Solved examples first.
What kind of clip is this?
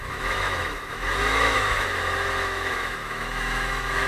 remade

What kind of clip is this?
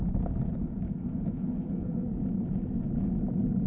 remade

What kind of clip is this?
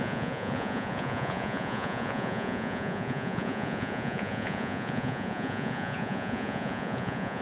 remade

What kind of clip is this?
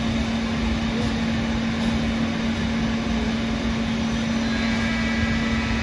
recorded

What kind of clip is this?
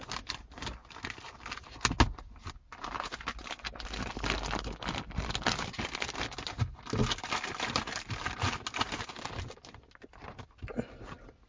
recorded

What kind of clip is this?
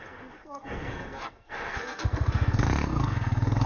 remade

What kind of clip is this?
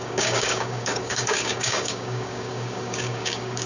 remade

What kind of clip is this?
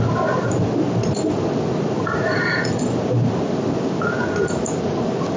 recorded